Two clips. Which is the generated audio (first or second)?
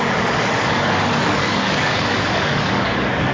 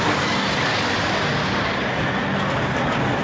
first